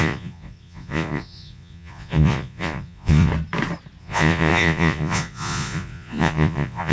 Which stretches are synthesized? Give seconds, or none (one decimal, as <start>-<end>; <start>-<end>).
0.0-3.3; 4.0-6.9